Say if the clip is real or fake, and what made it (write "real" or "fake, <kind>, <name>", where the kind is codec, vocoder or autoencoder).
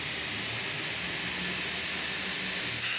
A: real